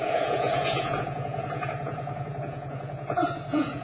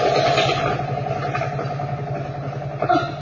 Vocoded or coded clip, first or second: first